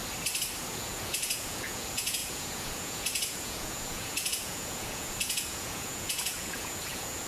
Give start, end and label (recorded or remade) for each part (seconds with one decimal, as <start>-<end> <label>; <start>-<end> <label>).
0.0-0.7 recorded; 0.7-7.3 remade